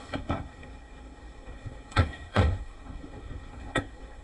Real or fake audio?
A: fake